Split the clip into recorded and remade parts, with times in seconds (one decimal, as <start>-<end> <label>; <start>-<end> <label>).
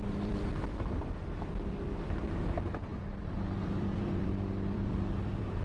0.0-5.6 remade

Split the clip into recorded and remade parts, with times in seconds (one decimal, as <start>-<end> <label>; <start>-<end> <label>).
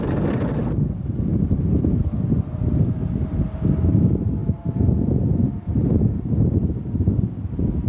0.0-1.3 recorded; 1.3-2.8 remade; 2.8-4.4 recorded; 4.4-6.7 remade; 6.7-7.9 recorded